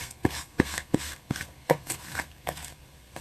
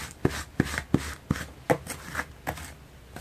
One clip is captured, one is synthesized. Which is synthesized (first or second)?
first